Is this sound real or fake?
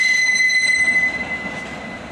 real